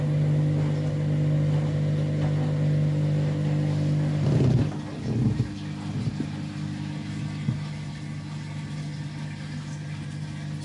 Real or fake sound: real